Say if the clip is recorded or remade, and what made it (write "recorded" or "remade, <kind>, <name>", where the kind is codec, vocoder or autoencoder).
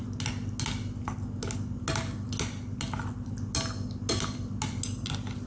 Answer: recorded